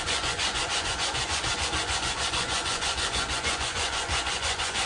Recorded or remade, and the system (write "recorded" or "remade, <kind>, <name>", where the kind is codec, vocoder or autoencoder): remade, vocoder, Vocos